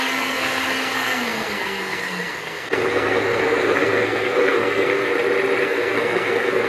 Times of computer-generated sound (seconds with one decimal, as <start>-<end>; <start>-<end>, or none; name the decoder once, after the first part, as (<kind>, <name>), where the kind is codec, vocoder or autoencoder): 0.0-5.1 (codec, SNAC); 5.6-6.7